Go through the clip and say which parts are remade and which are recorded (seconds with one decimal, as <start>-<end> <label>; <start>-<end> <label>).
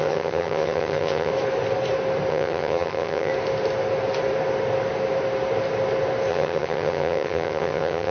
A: 0.0-1.3 remade; 1.3-2.3 recorded; 2.3-3.3 remade; 3.3-6.3 recorded; 6.3-8.1 remade